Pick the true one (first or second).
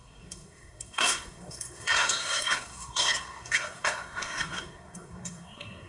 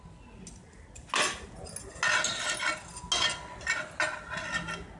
second